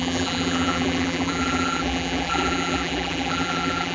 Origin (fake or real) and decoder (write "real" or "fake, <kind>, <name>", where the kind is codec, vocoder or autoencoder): fake, vocoder, BigVGAN v2